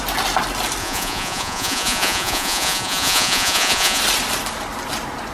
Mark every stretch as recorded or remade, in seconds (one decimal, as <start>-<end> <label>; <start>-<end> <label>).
0.0-0.8 recorded; 0.8-4.0 remade; 4.0-5.3 recorded